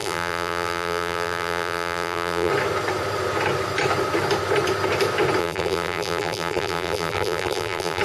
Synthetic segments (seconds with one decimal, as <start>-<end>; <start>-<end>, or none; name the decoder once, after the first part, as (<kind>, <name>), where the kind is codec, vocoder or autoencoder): 0.0-2.5 (vocoder, BigVGAN v2); 5.4-8.0